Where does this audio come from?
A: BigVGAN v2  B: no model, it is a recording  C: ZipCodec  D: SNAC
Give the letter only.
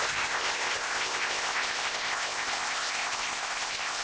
C